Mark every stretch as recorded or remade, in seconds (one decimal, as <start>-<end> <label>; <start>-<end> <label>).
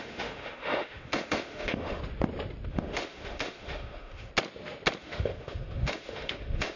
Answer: 0.0-2.0 remade; 2.0-2.7 recorded; 2.7-4.3 remade; 4.3-5.0 recorded; 5.0-6.8 remade